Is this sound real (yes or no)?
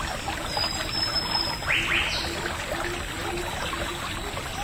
yes